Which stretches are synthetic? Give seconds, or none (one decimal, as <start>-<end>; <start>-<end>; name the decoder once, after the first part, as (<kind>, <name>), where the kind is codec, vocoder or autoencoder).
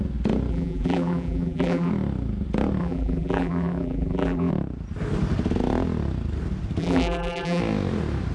0.5-1.9 (vocoder, BigVGAN v2); 2.8-4.5; 6.8-7.6